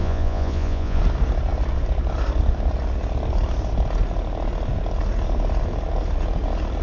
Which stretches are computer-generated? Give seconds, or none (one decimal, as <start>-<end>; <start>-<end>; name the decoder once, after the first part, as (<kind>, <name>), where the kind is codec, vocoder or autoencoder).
0.0-1.0 (vocoder, Vocos)